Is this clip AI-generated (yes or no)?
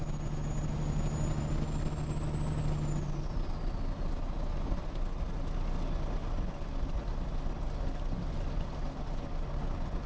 no